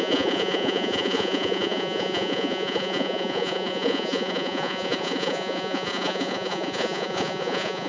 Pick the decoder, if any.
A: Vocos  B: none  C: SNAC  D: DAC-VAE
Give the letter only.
A